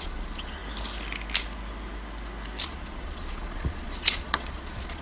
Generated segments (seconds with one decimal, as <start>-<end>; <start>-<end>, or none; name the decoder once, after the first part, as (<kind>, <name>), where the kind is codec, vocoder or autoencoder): 0.0-0.6 (vocoder, Vocos); 2.6-5.0